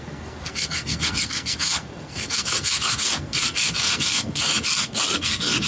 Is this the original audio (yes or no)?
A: no